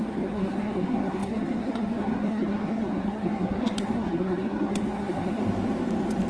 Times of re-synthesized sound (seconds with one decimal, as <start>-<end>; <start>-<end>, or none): 0.0-5.4